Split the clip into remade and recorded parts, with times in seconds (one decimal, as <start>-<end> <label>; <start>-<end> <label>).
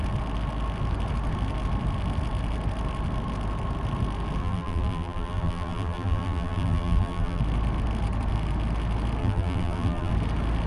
0.0-4.4 recorded; 4.4-7.4 remade; 7.4-9.2 recorded; 9.2-10.1 remade; 10.1-10.7 recorded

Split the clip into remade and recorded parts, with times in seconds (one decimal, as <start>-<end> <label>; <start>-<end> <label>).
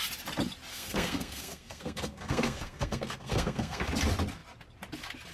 0.0-0.7 recorded; 0.7-3.9 remade; 3.9-5.3 recorded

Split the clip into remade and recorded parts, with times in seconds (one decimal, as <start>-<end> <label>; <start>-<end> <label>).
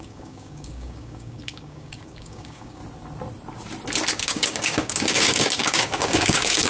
0.0-2.8 remade; 2.8-4.1 recorded; 4.1-6.7 remade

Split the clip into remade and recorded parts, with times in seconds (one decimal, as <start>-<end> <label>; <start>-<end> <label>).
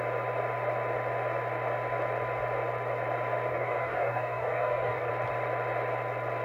0.0-3.5 recorded; 3.5-5.1 remade; 5.1-6.4 recorded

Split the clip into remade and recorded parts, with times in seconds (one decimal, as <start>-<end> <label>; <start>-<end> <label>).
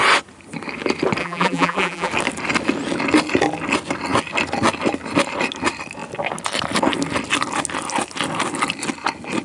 0.0-1.2 recorded; 1.2-2.1 remade; 2.1-9.4 recorded